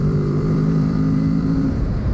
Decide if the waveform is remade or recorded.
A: remade